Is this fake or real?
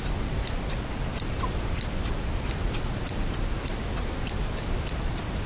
real